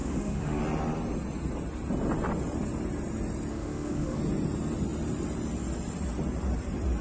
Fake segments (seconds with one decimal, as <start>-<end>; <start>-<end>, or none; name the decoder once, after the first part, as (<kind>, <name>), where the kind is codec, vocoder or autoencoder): 0.0-0.6 (autoencoder, DAC-VAE); 3.5-4.2